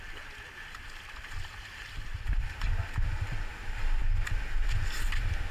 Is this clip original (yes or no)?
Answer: yes